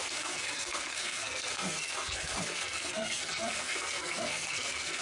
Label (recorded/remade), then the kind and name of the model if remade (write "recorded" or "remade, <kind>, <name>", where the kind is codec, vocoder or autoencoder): remade, codec, SNAC